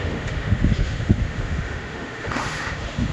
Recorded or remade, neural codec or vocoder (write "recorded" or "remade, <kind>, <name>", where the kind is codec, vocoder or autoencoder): remade, autoencoder, DAC-VAE